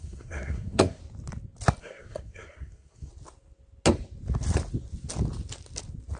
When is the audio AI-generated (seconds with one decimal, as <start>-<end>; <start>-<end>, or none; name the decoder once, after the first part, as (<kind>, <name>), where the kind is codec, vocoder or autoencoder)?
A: 0.0-1.0 (codec, SNAC); 1.8-3.1